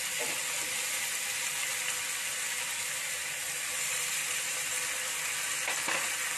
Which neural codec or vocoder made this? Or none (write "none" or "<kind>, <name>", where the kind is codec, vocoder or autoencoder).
none